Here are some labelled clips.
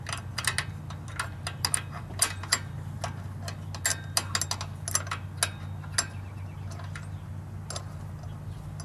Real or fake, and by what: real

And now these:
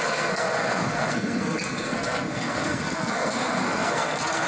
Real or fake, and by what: fake, codec, SNAC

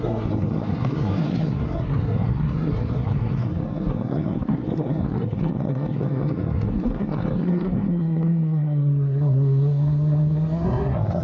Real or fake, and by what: fake, codec, SNAC